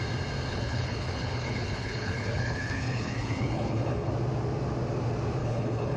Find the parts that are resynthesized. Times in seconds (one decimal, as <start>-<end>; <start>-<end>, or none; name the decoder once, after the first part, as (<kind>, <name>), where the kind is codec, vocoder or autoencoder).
0.5-4.1 (codec, HILCodec); 5.4-6.0